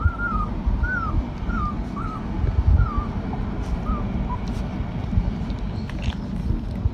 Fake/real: real